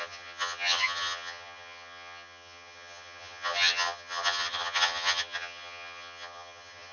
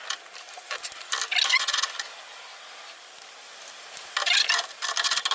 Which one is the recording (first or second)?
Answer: second